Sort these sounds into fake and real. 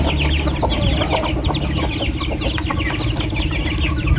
real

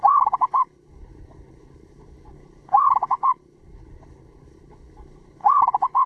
fake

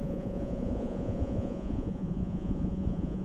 fake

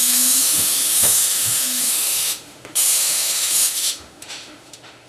fake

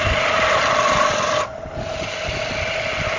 real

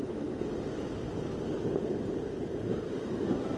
real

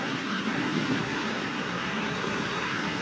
fake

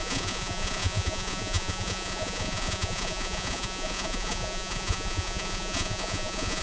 fake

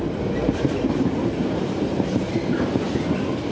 real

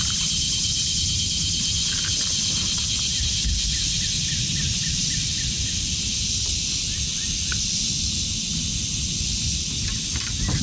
real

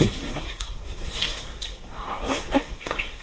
fake